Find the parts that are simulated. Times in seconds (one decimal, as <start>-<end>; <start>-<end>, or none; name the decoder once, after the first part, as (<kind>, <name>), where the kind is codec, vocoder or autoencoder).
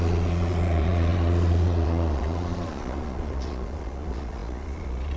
0.0-5.2 (vocoder, Vocos)